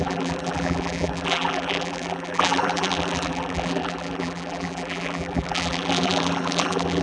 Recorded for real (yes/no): no